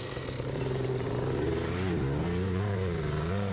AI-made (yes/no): yes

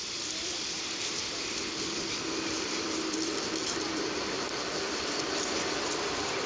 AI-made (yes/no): yes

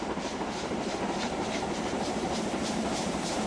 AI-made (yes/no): yes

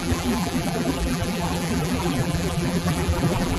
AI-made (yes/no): yes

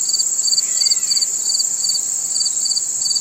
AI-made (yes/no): yes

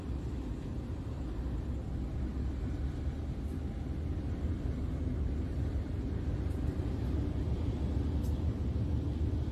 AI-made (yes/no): no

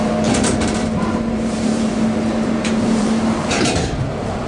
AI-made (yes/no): yes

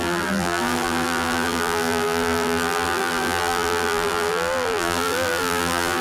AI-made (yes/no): yes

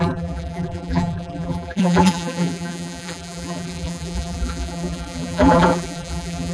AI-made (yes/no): yes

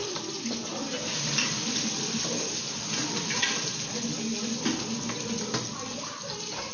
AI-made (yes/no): no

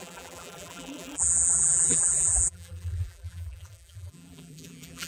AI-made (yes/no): yes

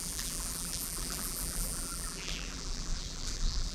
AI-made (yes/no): yes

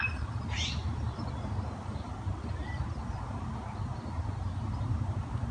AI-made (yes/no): yes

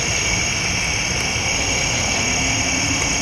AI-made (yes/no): no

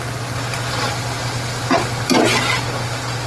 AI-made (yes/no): no